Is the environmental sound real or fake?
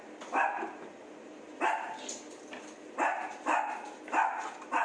real